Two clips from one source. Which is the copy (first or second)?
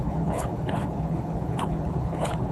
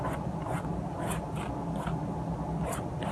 first